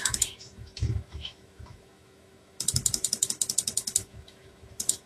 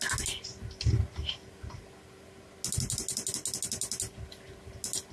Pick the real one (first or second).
second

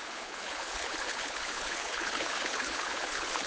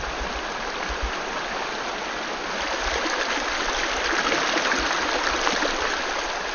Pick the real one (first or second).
second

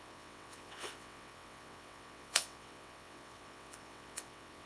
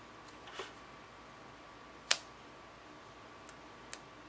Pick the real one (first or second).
second